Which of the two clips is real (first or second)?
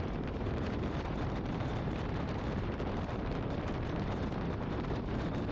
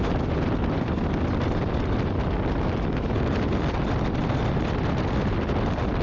second